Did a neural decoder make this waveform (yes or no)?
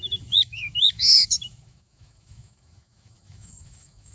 yes